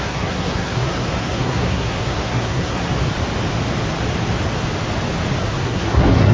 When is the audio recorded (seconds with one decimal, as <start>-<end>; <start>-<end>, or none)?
2.9-5.4